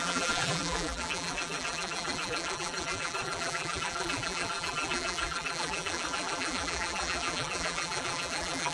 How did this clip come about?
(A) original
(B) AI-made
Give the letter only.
B